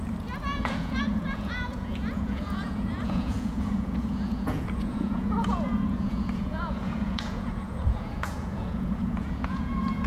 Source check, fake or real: fake